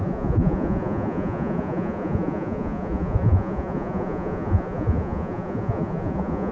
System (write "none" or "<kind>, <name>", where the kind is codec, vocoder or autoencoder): vocoder, Vocos